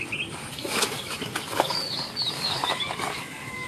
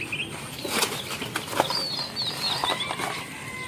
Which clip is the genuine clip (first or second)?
second